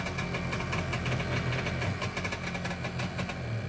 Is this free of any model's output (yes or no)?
yes